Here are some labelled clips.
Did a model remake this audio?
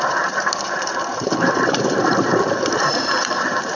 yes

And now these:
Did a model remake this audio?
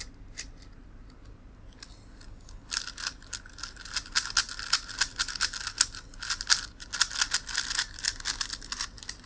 no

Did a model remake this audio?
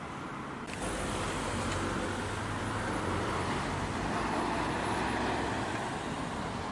no